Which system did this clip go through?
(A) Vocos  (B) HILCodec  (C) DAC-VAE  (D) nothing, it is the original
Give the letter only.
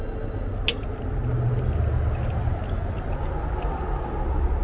D